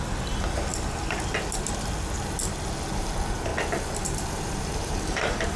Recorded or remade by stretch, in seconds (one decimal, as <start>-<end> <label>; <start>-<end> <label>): 0.0-0.7 remade; 0.7-3.0 recorded; 3.0-3.5 remade; 3.5-4.6 recorded; 4.6-5.6 remade